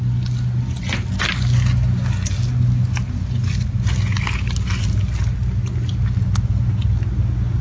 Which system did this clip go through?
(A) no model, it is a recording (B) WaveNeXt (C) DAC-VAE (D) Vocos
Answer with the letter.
A